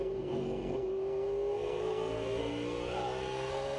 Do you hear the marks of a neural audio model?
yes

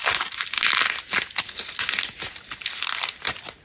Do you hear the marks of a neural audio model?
no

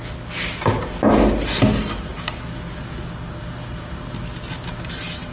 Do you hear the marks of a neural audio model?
no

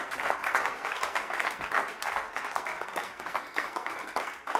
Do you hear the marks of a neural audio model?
yes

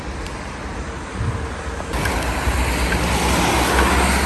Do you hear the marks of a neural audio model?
no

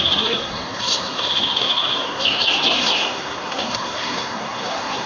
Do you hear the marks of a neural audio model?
yes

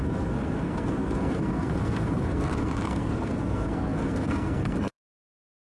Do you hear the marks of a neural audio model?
yes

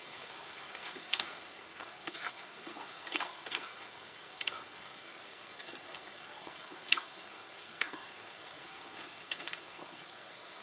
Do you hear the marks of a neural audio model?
yes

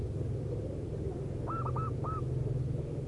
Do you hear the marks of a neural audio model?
no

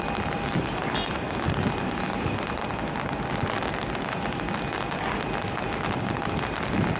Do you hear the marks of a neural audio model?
no